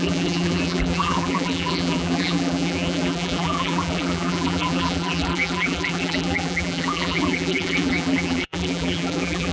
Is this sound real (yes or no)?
no